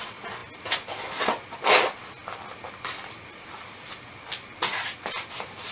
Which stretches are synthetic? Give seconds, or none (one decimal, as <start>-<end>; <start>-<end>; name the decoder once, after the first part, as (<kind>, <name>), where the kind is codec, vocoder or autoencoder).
none